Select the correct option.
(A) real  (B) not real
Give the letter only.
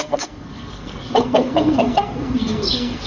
B